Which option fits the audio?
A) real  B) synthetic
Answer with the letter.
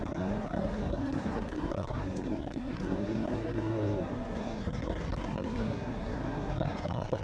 B